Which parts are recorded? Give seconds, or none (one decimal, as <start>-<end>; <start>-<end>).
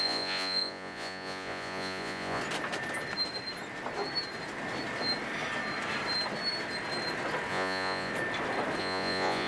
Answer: 2.4-7.5; 8.1-8.8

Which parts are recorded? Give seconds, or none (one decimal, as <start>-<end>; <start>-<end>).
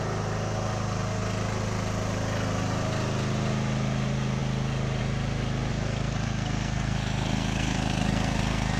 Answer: 0.0-5.7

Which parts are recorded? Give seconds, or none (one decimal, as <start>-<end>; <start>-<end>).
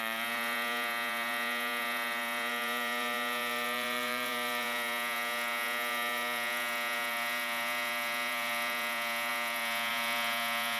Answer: none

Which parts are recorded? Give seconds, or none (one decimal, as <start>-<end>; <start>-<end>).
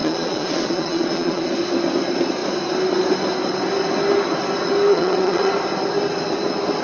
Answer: 1.5-4.9; 5.5-6.8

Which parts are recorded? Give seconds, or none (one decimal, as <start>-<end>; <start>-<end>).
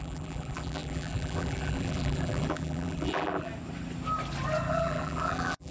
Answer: 3.5-4.7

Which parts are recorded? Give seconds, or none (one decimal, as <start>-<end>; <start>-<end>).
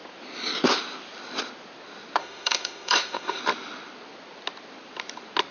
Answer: 0.0-2.2; 3.4-5.5